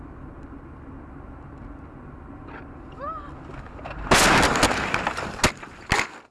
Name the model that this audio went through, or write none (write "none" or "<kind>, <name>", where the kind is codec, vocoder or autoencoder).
none